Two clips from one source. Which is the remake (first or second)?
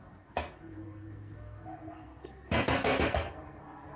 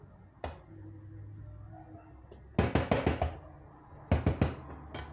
first